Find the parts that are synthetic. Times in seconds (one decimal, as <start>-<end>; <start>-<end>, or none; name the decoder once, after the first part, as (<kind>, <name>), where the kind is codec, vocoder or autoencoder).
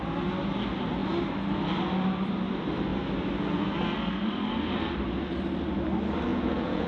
6.3-6.9 (vocoder, Vocos)